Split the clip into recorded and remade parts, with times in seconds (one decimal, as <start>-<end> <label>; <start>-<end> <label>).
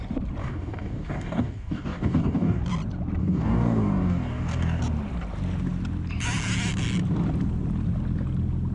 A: 0.0-0.4 recorded; 0.4-2.6 remade; 2.6-3.2 recorded; 3.2-4.8 remade; 4.8-8.7 recorded